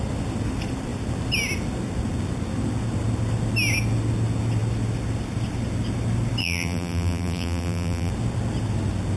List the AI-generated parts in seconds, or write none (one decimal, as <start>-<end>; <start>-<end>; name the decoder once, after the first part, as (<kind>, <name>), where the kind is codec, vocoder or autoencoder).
6.4-8.1 (vocoder, BigVGAN v2)